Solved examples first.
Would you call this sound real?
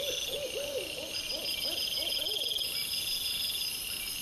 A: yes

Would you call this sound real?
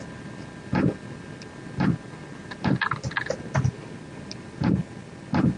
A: yes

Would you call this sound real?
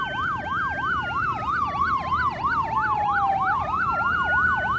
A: yes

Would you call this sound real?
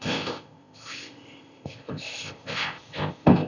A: no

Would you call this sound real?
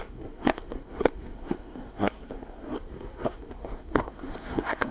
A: no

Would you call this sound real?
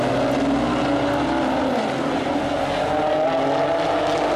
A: yes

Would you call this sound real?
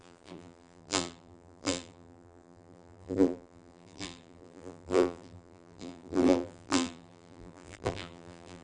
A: no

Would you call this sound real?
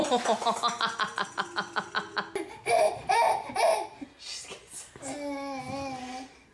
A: yes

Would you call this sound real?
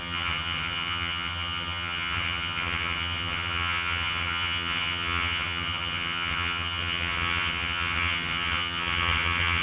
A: no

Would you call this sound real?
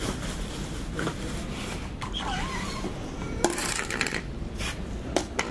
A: no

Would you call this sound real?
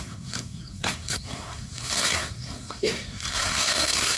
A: no